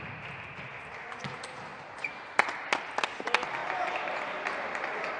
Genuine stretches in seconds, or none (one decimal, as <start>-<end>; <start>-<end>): 0.0-1.7; 2.3-3.6